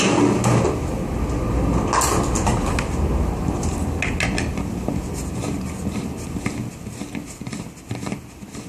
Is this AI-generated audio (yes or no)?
no